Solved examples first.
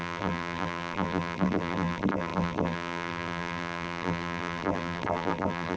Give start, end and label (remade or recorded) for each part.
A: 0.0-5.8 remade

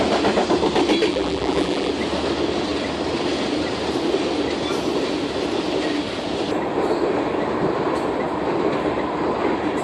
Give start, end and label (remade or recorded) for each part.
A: 0.0-1.1 recorded; 1.1-1.9 remade; 1.9-9.8 recorded

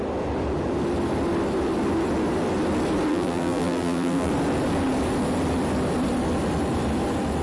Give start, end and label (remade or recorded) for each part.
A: 0.0-3.1 recorded; 3.1-4.3 remade; 4.3-7.4 recorded

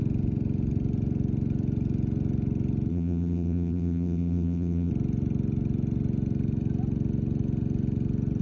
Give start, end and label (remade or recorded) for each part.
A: 0.0-2.9 recorded; 2.9-4.9 remade; 4.9-8.4 recorded

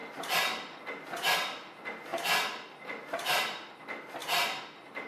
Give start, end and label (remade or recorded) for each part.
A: 0.0-0.8 remade; 0.8-2.1 recorded; 2.1-3.7 remade; 3.7-4.2 recorded; 4.2-5.1 remade

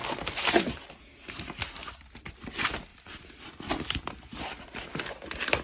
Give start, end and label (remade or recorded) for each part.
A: 0.0-0.9 remade; 0.9-1.8 recorded; 1.8-2.4 remade; 2.4-2.9 recorded; 2.9-5.1 remade; 5.1-5.6 recorded